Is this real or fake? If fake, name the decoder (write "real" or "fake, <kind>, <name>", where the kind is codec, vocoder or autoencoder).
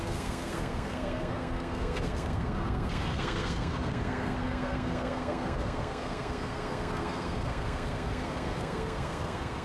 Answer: fake, codec, SNAC